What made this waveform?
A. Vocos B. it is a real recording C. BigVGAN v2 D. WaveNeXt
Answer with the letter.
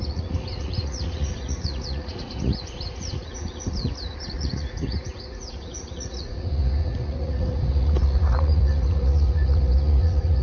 A